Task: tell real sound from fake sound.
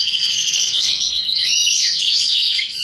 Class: fake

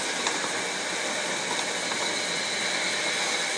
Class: real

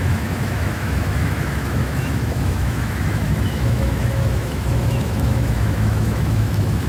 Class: fake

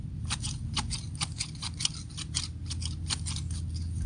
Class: real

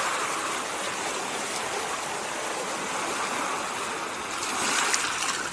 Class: real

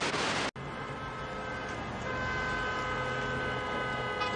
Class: real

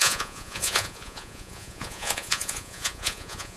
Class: fake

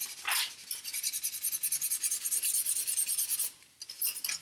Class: real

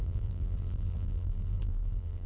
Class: fake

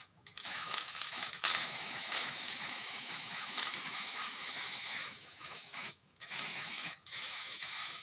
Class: fake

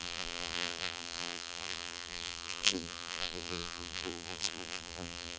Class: fake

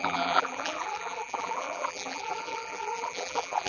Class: fake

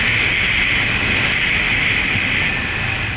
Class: real